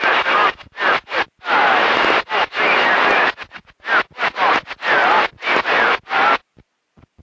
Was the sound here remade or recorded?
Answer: recorded